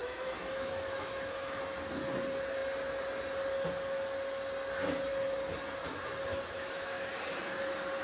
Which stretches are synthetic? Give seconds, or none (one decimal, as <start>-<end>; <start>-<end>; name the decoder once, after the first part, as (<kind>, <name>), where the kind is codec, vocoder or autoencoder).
0.0-1.6 (autoencoder, DAC-VAE); 6.3-7.1